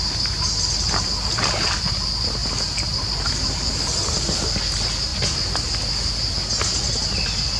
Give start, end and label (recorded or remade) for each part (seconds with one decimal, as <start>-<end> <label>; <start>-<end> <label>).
0.0-7.6 recorded